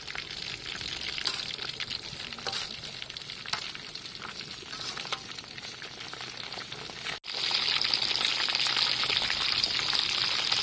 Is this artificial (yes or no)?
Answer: no